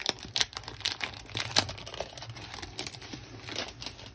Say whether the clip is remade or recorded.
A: remade